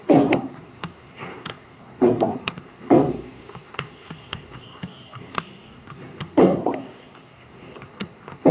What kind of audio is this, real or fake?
fake